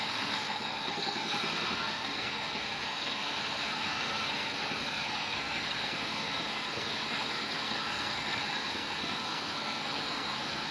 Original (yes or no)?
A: no